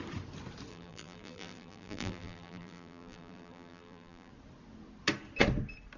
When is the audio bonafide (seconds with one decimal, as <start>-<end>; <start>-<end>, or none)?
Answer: 0.0-0.7; 4.3-6.0